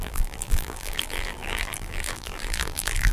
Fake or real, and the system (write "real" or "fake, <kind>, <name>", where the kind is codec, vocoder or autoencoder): fake, vocoder, BigVGAN v2